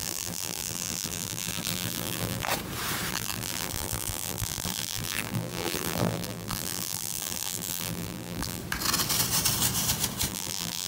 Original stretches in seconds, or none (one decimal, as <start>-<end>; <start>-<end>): 2.5-3.1; 8.6-10.3